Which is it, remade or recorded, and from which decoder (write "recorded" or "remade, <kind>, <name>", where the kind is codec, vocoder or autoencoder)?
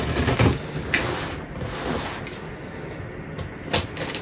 recorded